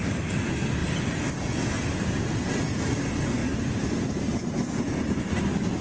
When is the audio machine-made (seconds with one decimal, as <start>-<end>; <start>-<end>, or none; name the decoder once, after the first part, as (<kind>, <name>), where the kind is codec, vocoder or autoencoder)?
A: 3.4-4.9 (vocoder, BigVGAN v2)